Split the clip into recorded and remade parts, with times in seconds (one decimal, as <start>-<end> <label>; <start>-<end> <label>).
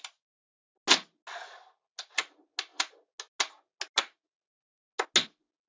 0.0-5.7 recorded